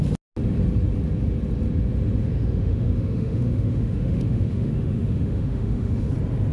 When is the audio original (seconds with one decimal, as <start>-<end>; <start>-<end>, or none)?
0.0-2.2; 6.1-6.5